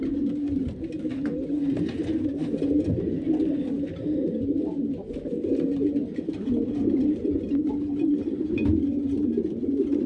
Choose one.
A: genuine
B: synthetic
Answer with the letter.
A